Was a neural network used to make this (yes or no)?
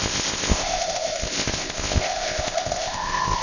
yes